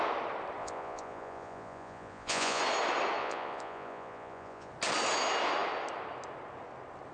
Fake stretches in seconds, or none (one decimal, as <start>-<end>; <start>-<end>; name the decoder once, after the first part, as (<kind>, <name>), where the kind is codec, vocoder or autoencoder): 0.6-2.6 (vocoder, Vocos); 3.2-4.7